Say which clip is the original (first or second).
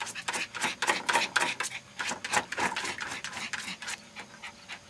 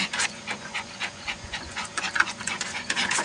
first